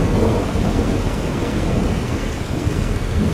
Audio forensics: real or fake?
fake